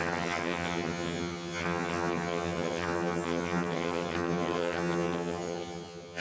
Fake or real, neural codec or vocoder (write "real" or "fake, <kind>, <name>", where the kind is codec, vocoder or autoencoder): fake, vocoder, HiFi-GAN